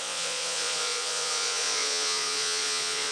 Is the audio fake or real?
fake